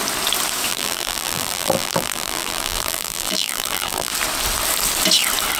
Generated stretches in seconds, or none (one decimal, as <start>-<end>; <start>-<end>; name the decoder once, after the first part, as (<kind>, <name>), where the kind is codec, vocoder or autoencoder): 0.7-4.1 (vocoder, BigVGAN v2)